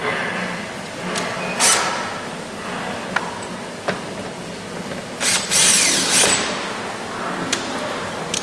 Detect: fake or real real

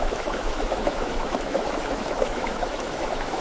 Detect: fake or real fake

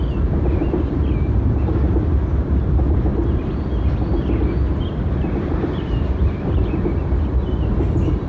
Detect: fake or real real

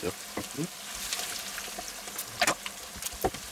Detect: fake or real real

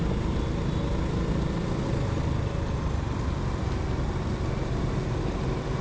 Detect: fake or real real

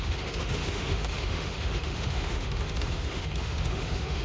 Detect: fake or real fake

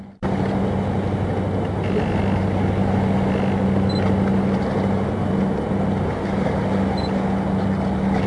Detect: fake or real real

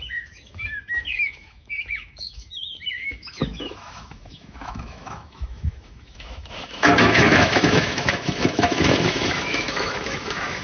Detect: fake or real fake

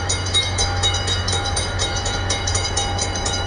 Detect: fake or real fake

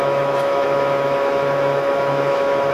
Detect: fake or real fake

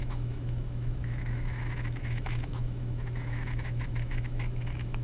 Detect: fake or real fake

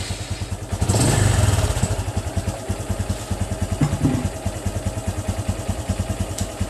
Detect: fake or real real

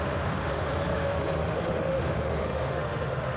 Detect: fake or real fake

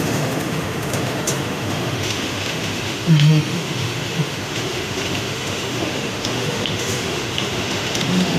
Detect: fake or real fake